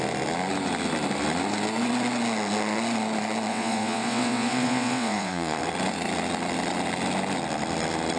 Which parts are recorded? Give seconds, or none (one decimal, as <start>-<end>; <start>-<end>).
0.0-3.5; 5.6-8.2